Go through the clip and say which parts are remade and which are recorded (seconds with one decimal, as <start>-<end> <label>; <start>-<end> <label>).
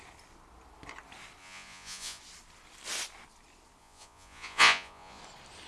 0.0-1.4 recorded; 1.4-2.2 remade; 2.2-3.8 recorded; 3.8-5.2 remade; 5.2-5.7 recorded